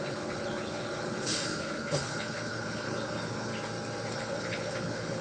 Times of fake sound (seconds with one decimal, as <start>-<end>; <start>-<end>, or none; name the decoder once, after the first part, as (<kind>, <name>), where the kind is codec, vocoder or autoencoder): 0.0-3.5 (codec, HILCodec); 4.1-5.2